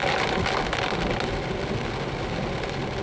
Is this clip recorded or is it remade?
recorded